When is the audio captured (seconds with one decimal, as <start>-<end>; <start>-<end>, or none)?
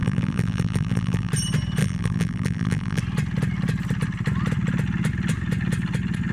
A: 1.3-1.8; 3.0-6.3